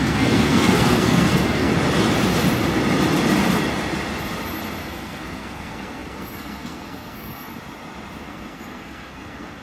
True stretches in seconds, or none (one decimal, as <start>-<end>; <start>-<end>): 1.7-4.8; 7.5-8.2